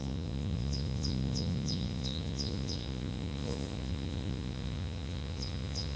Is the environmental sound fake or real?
fake